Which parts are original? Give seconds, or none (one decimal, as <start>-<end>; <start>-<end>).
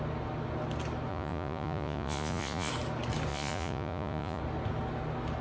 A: 0.0-1.1; 2.7-3.3; 4.4-5.4